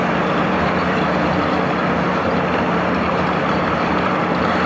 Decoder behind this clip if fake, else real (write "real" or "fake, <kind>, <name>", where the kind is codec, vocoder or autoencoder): fake, vocoder, BigVGAN v2